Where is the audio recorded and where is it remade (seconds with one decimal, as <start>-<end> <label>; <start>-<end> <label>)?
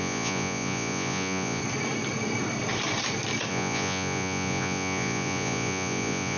0.0-1.6 remade; 1.6-3.5 recorded; 3.5-6.4 remade